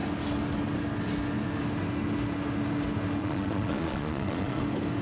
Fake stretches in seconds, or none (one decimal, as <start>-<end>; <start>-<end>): 3.2-4.6